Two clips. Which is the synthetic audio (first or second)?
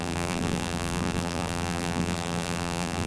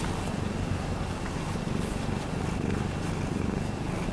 first